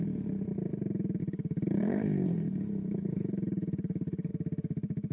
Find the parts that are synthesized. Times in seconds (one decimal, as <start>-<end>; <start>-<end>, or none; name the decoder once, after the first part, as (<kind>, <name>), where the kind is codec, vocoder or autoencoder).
1.2-4.3 (codec, HILCodec)